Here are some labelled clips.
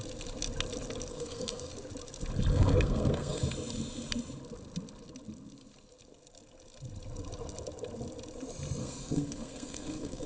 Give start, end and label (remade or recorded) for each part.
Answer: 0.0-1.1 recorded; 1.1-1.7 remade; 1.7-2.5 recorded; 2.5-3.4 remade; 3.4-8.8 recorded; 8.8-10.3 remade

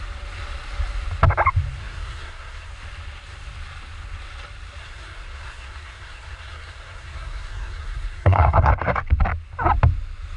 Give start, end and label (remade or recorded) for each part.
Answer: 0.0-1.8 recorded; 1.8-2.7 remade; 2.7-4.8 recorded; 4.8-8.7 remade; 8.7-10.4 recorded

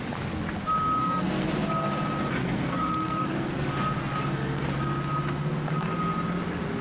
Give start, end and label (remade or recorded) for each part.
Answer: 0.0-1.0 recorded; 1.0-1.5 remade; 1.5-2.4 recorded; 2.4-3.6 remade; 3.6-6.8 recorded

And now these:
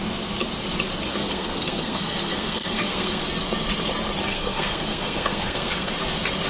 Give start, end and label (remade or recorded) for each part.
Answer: 0.0-1.2 recorded; 1.2-3.2 remade; 3.2-4.3 recorded; 4.3-5.9 remade; 5.9-6.5 recorded